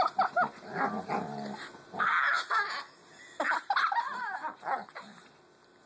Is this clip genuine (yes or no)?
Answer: yes